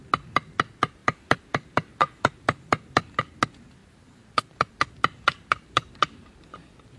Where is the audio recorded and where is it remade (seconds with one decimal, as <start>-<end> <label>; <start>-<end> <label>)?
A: 0.0-1.0 recorded; 1.0-3.2 remade; 3.2-3.8 recorded; 3.8-4.7 remade; 4.7-7.0 recorded